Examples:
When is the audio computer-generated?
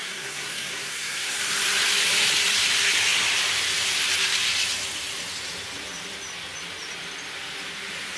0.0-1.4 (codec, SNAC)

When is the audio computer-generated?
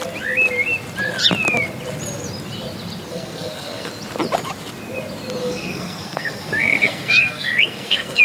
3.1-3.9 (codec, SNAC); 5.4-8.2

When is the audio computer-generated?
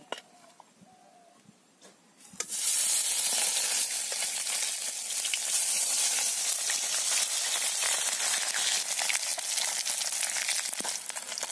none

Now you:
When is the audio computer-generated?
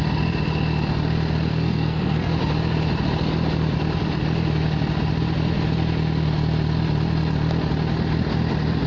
1.5-2.3 (codec, SNAC)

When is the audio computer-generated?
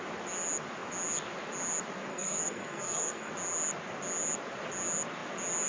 2.1-3.3 (codec, SNAC)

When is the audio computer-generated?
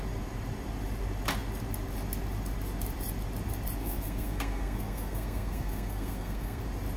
3.8-6.6 (codec, SNAC)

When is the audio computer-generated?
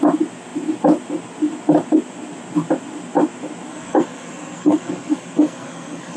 3.7-6.2 (codec, SNAC)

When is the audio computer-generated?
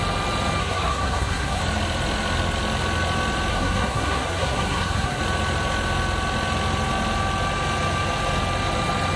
0.6-1.6 (codec, SNAC); 3.5-5.2